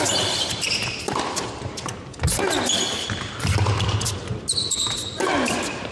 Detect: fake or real real